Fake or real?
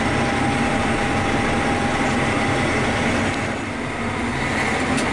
real